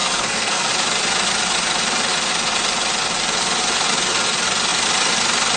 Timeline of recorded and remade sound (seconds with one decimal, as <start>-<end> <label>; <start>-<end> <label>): 0.0-0.7 remade; 0.7-5.6 recorded